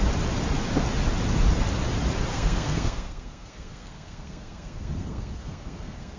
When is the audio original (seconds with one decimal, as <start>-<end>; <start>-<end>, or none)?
0.0-2.3